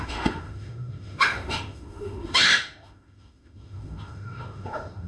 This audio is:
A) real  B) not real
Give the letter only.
B